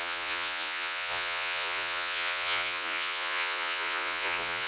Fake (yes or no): yes